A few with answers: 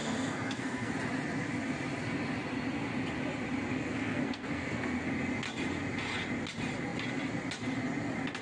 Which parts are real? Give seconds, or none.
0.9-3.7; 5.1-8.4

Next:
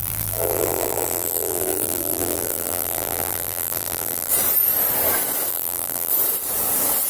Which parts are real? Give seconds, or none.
4.3-5.5; 6.1-7.1

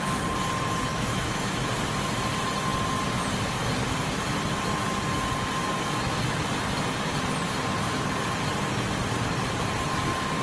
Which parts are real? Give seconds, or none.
0.0-0.9; 1.7-10.4

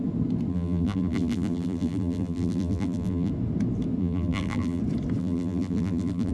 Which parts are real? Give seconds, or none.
0.0-0.5; 3.3-4.0; 4.8-5.2

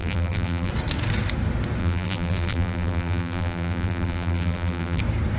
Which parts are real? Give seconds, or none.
0.7-1.8; 5.0-5.4